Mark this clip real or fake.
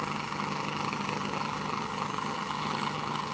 fake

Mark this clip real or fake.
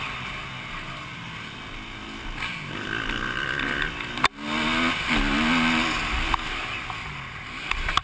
real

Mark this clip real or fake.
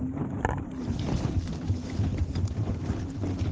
real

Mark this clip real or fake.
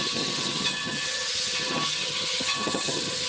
fake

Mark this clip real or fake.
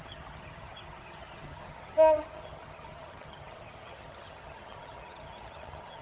fake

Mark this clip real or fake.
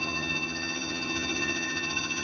fake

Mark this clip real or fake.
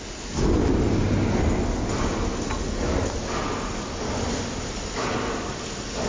real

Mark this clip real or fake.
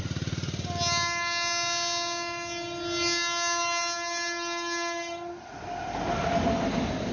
real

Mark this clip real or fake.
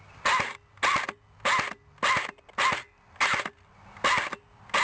real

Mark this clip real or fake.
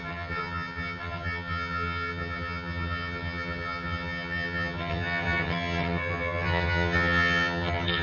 fake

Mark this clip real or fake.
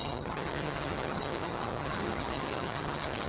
fake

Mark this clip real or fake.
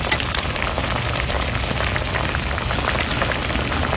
real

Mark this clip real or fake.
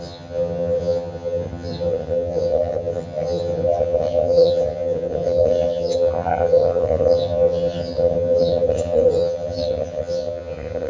fake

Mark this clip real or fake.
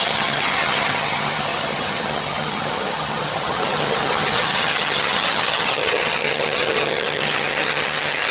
fake